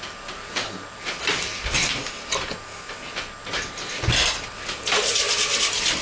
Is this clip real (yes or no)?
yes